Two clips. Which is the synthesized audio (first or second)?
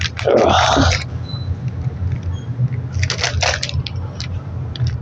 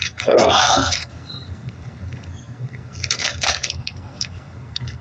second